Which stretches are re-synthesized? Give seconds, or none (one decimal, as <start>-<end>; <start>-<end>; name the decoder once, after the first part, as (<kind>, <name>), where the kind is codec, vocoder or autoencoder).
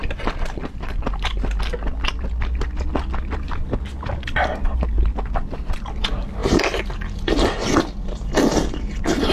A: none